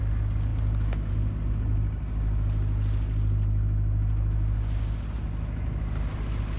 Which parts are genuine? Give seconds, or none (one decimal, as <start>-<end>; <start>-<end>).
0.0-6.6